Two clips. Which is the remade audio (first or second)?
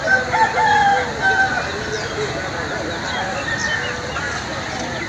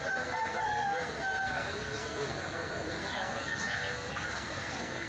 second